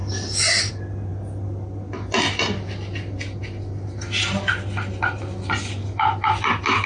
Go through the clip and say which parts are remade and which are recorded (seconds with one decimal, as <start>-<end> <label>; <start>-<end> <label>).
0.0-6.9 recorded